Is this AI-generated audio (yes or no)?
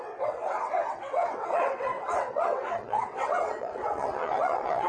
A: yes